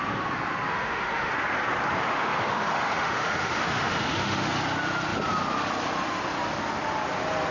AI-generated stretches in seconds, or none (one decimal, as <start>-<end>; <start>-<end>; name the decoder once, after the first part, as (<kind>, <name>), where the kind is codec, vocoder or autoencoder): 0.7-1.3 (autoencoder, DAC-VAE); 2.0-4.5